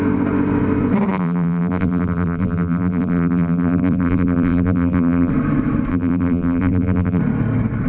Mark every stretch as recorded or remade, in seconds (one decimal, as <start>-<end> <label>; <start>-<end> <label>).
0.0-1.1 recorded; 1.1-5.3 remade; 5.3-5.9 recorded; 5.9-7.2 remade; 7.2-7.9 recorded